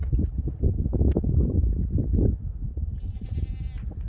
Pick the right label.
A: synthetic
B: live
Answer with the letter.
B